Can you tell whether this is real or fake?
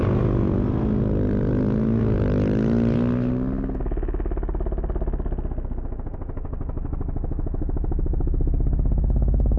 real